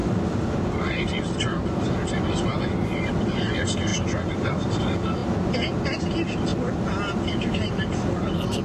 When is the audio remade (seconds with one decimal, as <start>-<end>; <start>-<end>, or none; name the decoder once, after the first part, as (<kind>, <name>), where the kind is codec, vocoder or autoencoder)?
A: none